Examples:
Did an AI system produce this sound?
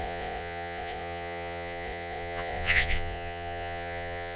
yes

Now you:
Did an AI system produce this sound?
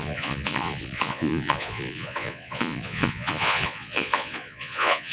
yes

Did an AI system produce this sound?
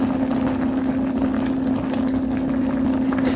no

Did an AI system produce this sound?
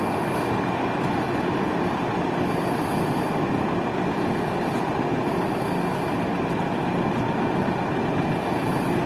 no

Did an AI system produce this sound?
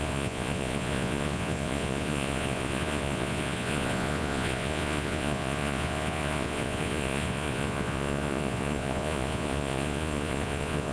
yes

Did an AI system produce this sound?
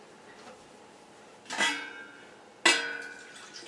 no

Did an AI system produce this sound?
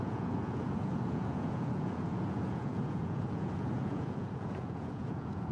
yes